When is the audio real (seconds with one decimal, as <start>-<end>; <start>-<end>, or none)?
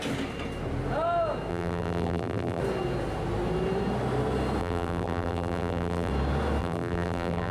0.0-1.5; 2.6-4.6; 6.1-6.6